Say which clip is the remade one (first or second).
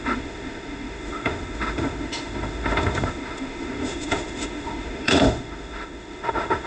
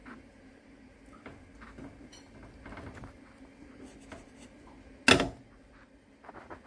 first